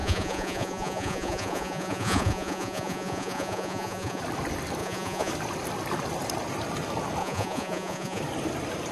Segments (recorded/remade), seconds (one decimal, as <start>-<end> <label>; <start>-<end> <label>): 0.0-4.2 remade; 4.2-4.8 recorded; 4.8-5.3 remade; 5.3-7.2 recorded; 7.2-8.2 remade; 8.2-8.9 recorded